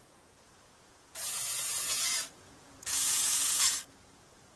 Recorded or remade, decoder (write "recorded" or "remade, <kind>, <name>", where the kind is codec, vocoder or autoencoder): remade, vocoder, Vocos